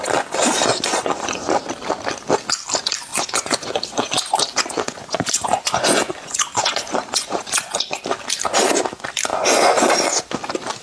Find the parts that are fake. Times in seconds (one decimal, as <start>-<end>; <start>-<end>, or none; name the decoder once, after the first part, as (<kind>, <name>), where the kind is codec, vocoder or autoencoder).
0.7-1.6 (vocoder, Vocos); 3.1-8.0; 9.3-9.9